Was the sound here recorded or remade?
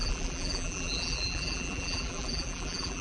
remade